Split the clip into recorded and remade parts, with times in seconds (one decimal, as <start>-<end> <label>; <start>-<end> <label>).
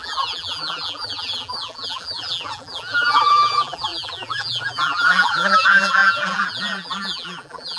0.0-7.8 remade